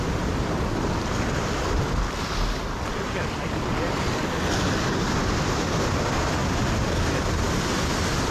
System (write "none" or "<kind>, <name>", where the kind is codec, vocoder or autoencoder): none